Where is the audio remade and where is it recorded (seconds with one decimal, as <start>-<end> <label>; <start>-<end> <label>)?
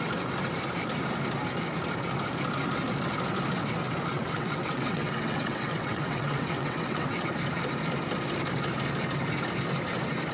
0.0-4.1 recorded; 4.1-7.3 remade; 7.3-10.3 recorded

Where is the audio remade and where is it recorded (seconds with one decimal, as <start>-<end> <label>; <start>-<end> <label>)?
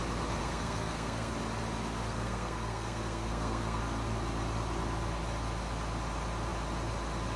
0.0-0.4 recorded; 0.4-1.3 remade; 1.3-2.0 recorded; 2.0-3.8 remade; 3.8-7.4 recorded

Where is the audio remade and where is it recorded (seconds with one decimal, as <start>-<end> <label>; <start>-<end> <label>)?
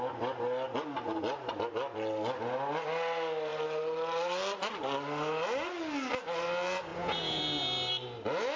0.0-6.9 recorded; 6.9-7.4 remade; 7.4-8.6 recorded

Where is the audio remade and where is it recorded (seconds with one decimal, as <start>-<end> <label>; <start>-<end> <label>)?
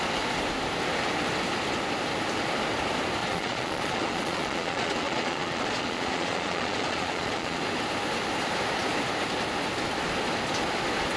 0.0-3.2 recorded; 3.2-7.6 remade; 7.6-11.2 recorded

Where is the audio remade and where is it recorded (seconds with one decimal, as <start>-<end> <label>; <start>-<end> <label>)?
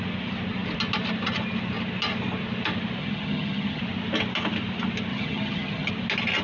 0.0-3.0 recorded; 3.0-3.8 remade; 3.8-5.1 recorded; 5.1-5.9 remade; 5.9-6.4 recorded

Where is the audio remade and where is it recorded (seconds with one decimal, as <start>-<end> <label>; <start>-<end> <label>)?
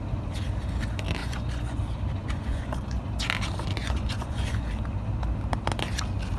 0.0-1.2 recorded; 1.2-1.8 remade; 1.8-2.2 recorded; 2.2-3.0 remade; 3.0-3.8 recorded; 3.8-4.7 remade; 4.7-6.4 recorded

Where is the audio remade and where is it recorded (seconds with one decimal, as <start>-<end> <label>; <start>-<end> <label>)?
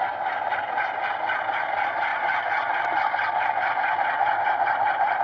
0.0-5.2 recorded